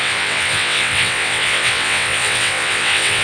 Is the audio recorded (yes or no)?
no